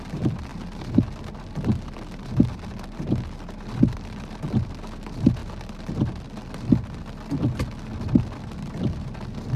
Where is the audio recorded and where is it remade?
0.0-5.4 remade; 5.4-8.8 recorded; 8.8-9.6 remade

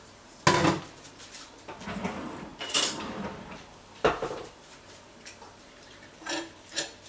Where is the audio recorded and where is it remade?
0.0-2.5 recorded; 2.5-7.1 remade

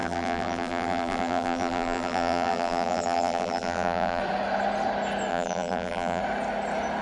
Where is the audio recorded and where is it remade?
0.0-4.2 remade; 4.2-5.3 recorded; 5.3-6.2 remade; 6.2-7.0 recorded